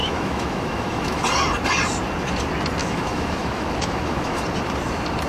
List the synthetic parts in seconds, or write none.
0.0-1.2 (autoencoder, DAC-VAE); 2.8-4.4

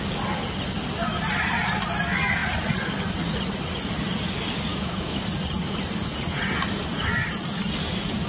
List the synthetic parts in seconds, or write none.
4.7-5.2 (autoencoder, DAC-VAE)

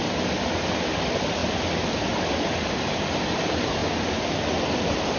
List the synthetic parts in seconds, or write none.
none